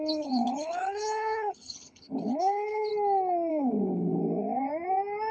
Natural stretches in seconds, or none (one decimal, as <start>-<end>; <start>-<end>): 2.9-3.5; 4.2-5.3